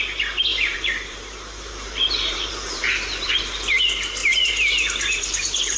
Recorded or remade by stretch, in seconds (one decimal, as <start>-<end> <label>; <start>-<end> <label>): 0.0-0.5 recorded; 0.5-3.8 remade; 3.8-4.2 recorded; 4.2-5.8 remade